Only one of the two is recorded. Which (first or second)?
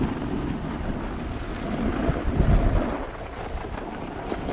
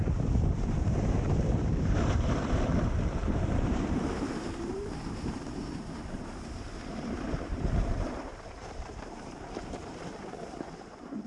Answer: first